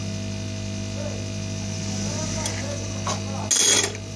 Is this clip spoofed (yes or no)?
no